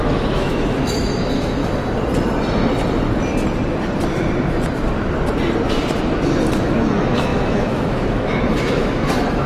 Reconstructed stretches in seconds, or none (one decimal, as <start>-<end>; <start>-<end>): 0.0-1.6; 6.5-9.5